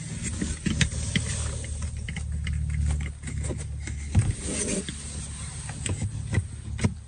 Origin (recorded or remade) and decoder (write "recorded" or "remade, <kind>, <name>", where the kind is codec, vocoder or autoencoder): recorded